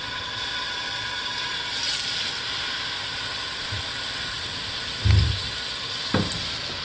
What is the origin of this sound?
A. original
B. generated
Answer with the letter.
A